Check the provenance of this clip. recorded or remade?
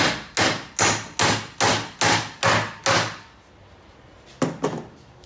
recorded